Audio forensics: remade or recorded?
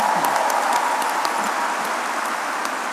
recorded